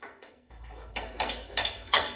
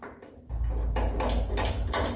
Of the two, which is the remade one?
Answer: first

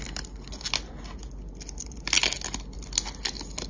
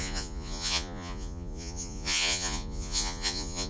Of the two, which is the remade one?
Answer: second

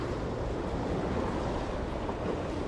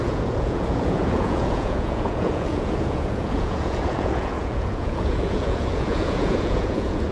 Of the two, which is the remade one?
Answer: second